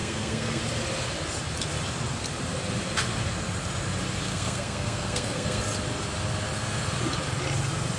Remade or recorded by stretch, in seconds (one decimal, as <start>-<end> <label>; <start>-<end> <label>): 0.0-0.6 remade; 0.6-4.3 recorded; 4.3-5.6 remade; 5.6-8.0 recorded